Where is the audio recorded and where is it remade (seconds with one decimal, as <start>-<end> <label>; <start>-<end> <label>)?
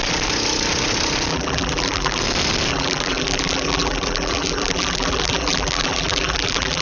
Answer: 0.0-1.3 recorded; 1.3-2.2 remade; 2.2-2.7 recorded; 2.7-6.8 remade